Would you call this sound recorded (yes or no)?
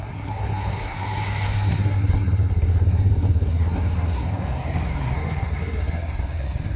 no